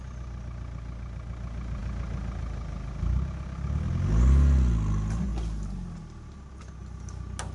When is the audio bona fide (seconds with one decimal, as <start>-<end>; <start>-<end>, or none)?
0.0-7.5